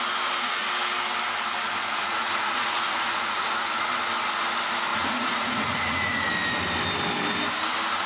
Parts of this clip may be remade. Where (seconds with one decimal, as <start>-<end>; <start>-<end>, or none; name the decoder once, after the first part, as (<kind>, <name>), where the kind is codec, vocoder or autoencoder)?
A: 1.8-3.9 (vocoder, Vocos); 4.9-6.3